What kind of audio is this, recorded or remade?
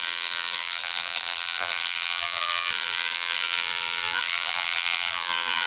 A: remade